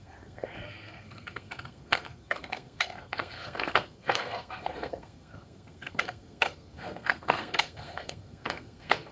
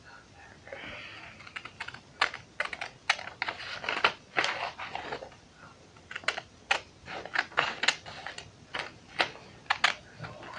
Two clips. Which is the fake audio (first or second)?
first